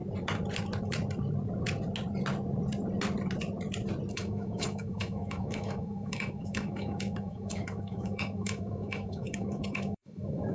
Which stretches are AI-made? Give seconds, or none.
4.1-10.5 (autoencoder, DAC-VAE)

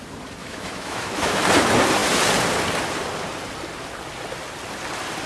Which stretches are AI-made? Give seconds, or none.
0.4-1.4 (autoencoder, DAC-VAE)

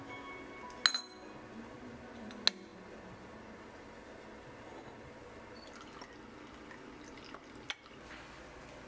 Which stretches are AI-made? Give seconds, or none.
none

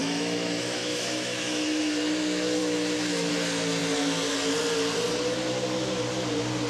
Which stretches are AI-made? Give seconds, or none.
0.0-1.8 (autoencoder, DAC-VAE); 2.6-3.3

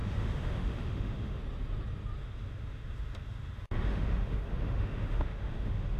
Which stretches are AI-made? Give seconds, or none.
0.0-1.4 (autoencoder, DAC-VAE); 2.2-6.0

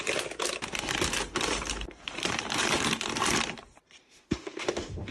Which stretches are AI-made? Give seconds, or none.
4.0-5.1 (autoencoder, DAC-VAE)

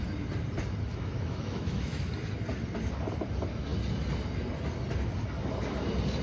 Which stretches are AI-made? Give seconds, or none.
0.9-2.1 (autoencoder, DAC-VAE)

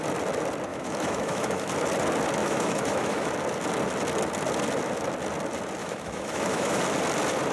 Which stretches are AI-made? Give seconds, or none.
0.7-1.7 (autoencoder, DAC-VAE); 2.4-3.3; 5.8-6.8